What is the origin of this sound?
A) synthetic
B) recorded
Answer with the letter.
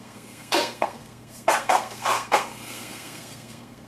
A